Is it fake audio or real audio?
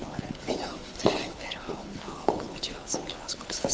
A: fake